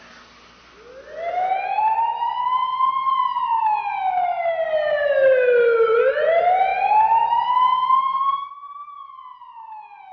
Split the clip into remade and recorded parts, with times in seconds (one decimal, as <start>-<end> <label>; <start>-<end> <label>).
0.0-10.1 recorded